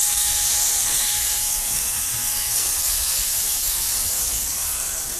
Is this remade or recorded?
remade